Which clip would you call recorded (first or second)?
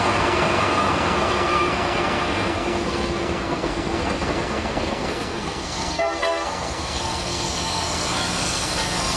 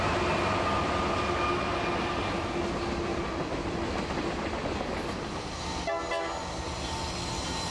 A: second